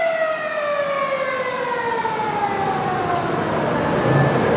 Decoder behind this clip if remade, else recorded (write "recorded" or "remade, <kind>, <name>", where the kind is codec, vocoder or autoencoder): recorded